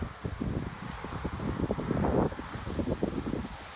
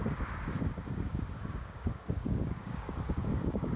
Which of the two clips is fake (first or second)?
second